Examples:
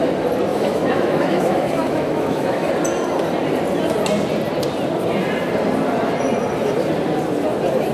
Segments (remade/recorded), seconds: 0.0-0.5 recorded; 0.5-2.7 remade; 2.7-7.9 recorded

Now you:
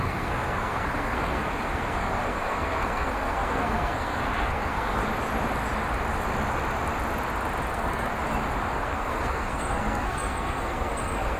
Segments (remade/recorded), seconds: 0.0-5.0 remade; 5.0-7.7 recorded; 7.7-8.1 remade; 8.1-8.7 recorded; 8.7-11.4 remade

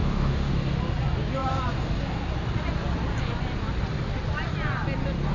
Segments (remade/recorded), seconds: 0.0-0.5 remade; 0.5-5.3 recorded

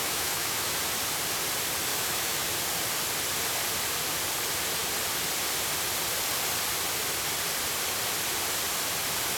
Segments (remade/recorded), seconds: 0.0-0.7 remade; 0.7-1.9 recorded; 1.9-2.5 remade; 2.5-9.4 recorded

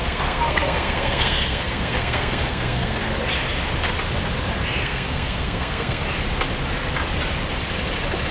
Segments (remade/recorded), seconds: 0.0-3.0 remade; 3.0-4.8 recorded; 4.8-6.0 remade; 6.0-8.3 recorded

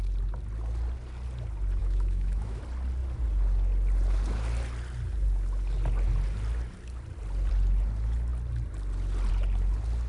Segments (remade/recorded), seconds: 0.0-1.8 recorded; 1.8-2.6 remade; 2.6-10.1 recorded

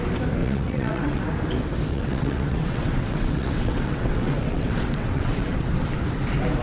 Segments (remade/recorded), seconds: 0.0-0.4 recorded; 0.4-1.2 remade; 1.2-1.9 recorded; 1.9-5.7 remade; 5.7-6.6 recorded

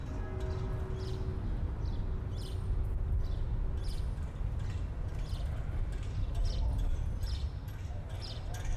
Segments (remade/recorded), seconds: 0.0-8.8 recorded